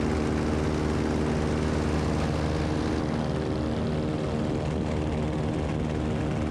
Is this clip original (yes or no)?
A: yes